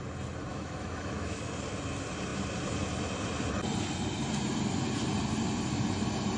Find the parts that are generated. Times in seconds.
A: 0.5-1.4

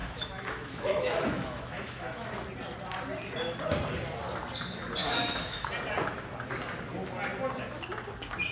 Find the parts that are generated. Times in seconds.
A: 0.0-2.3; 5.0-5.7